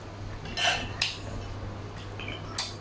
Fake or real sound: real